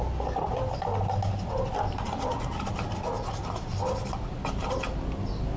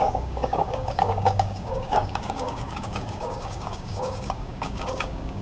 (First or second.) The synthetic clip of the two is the second